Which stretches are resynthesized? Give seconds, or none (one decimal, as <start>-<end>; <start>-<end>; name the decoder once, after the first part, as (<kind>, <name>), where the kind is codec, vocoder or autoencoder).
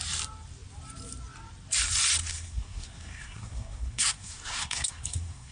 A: 2.2-5.5 (codec, SNAC)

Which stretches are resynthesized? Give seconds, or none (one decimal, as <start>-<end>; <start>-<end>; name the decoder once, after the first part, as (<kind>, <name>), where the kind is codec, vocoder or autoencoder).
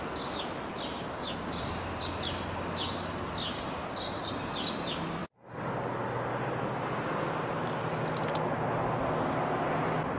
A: none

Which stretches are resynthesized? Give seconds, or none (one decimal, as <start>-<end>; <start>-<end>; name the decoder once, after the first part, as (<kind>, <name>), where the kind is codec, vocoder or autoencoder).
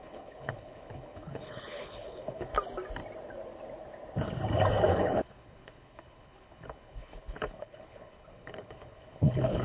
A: 0.0-2.5 (codec, HILCodec); 4.9-9.6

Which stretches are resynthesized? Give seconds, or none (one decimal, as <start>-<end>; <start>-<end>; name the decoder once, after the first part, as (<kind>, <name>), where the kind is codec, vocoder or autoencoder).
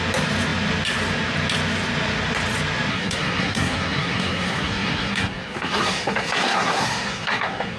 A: 2.9-7.8 (codec, SNAC)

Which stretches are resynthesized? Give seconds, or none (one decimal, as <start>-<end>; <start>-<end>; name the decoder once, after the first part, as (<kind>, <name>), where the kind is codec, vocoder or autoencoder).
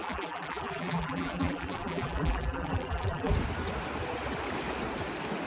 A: 0.0-3.3 (vocoder, BigVGAN v2)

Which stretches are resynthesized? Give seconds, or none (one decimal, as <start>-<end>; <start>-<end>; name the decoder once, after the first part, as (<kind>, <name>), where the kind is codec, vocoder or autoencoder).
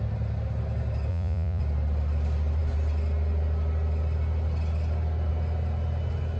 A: 1.1-1.6 (vocoder, Vocos)